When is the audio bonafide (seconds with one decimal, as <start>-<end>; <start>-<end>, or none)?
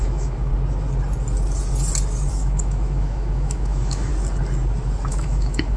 0.5-2.3; 4.1-5.1